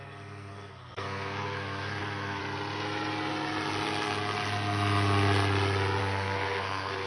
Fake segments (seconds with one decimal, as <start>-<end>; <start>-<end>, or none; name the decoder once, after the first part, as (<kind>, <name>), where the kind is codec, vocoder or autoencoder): 0.0-2.4 (codec, SNAC); 6.0-7.1